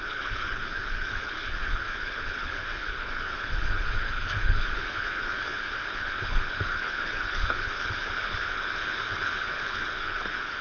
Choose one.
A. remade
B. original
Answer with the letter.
A